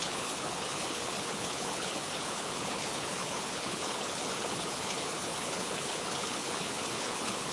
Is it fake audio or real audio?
fake